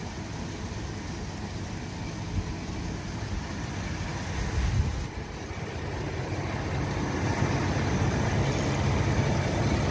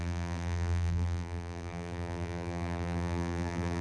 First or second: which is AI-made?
second